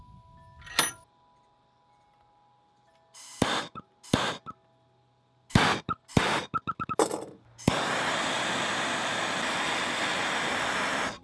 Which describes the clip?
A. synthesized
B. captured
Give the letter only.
B